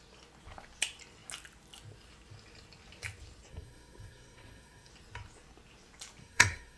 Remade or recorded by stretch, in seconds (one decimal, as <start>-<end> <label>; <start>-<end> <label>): 0.0-3.5 recorded; 3.5-4.9 remade; 4.9-6.2 recorded; 6.2-6.8 remade